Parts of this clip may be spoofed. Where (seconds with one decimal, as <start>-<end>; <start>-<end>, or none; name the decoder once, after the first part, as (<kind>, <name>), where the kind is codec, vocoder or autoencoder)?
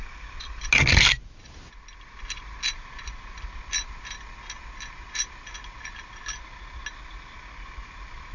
none